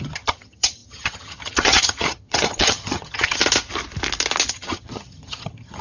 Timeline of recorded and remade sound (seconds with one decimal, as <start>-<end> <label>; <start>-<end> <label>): 0.0-3.4 remade; 3.4-4.5 recorded; 4.5-5.8 remade